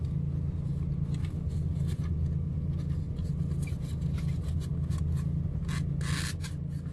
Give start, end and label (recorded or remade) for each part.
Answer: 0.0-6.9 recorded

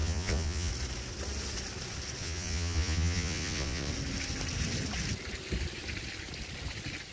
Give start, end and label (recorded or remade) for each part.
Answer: 0.0-0.7 remade; 0.7-2.2 recorded; 2.2-3.9 remade; 3.9-7.1 recorded

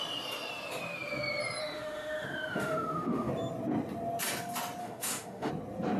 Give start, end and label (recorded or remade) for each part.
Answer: 0.0-1.6 recorded; 1.6-3.3 remade; 3.3-4.8 recorded; 4.8-5.5 remade; 5.5-6.0 recorded